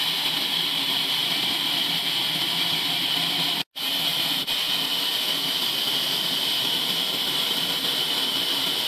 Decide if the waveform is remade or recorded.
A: recorded